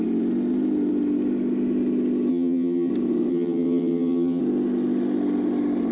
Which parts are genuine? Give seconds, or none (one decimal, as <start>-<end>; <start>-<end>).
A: 0.0-2.3; 2.9-3.3; 4.4-5.9